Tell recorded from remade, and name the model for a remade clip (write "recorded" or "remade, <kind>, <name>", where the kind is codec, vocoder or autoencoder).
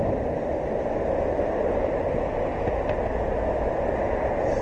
recorded